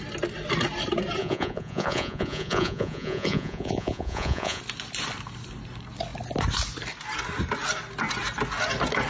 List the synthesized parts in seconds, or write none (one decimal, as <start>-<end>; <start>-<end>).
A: 1.2-4.6